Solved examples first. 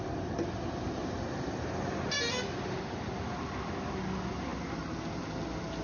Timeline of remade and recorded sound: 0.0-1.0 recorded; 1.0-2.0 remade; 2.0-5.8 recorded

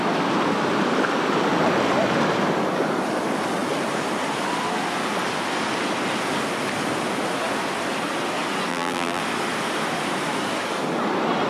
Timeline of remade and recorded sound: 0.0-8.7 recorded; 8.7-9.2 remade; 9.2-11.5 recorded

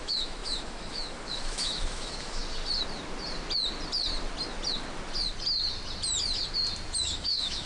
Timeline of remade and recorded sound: 0.0-2.4 remade; 2.4-7.0 recorded; 7.0-7.7 remade

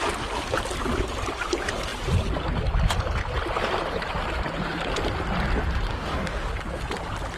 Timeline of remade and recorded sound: 0.0-5.9 recorded; 5.9-6.5 remade; 6.5-7.4 recorded

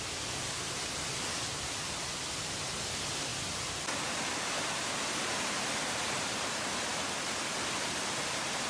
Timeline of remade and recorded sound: 0.0-3.3 remade; 3.3-3.9 recorded; 3.9-6.9 remade; 6.9-8.7 recorded

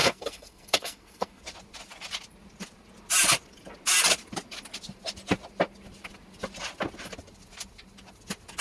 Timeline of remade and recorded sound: 0.0-1.4 remade; 1.4-8.6 recorded